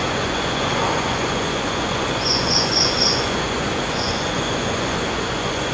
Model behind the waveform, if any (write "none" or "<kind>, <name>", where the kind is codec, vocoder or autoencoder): vocoder, Vocos